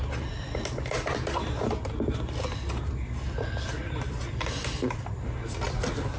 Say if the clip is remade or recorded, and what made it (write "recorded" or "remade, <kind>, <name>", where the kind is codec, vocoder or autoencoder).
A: recorded